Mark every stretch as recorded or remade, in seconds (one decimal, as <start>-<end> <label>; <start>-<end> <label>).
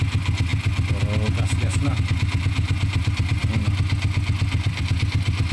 0.0-5.5 recorded